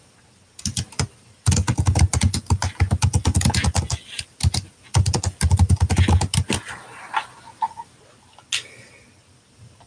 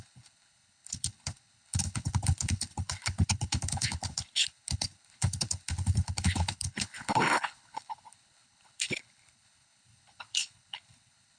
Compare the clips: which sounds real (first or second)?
first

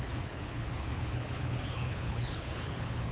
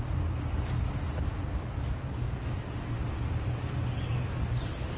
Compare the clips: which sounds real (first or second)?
second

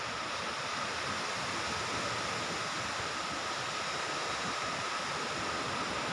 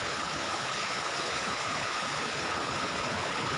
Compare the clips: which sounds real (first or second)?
first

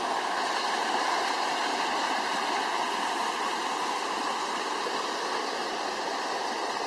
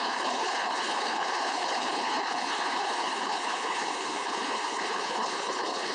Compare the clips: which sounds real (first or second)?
first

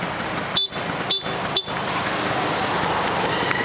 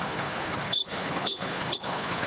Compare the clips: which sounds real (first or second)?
first